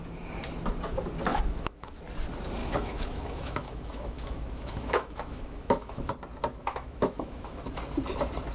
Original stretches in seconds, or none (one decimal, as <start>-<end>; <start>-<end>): 0.0-1.3; 2.0-2.6; 6.1-6.6; 7.8-8.5